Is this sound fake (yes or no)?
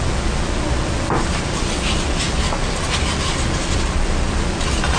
no